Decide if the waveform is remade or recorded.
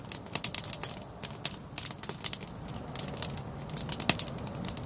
recorded